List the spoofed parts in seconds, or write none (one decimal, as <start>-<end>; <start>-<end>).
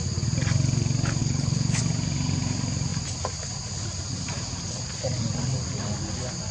1.2-1.8